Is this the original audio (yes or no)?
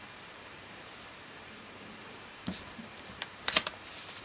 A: no